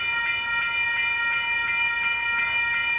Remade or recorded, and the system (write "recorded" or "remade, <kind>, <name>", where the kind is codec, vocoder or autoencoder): recorded